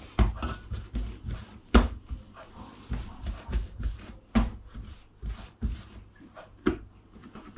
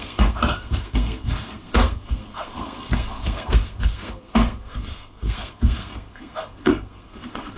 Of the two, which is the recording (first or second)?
first